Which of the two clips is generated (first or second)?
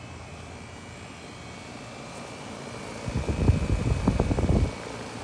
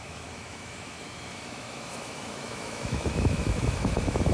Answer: second